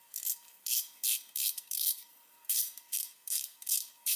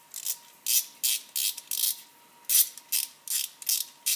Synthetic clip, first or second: first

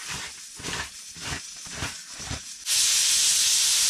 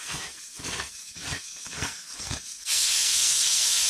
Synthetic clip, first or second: second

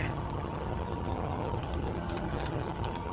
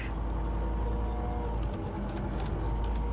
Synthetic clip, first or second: first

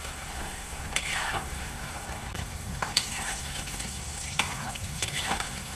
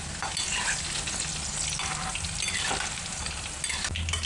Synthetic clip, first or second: first